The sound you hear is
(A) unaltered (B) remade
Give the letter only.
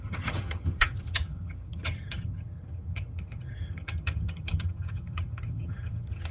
B